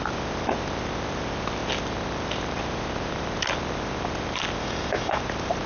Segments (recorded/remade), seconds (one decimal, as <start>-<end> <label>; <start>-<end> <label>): 0.0-4.6 recorded; 4.6-5.2 remade; 5.2-5.7 recorded